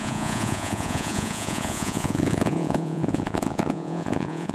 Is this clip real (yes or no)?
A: no